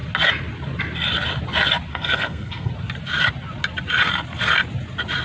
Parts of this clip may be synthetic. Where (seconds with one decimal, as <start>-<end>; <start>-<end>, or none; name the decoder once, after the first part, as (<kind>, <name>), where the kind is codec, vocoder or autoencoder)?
1.9-2.7 (codec, SNAC)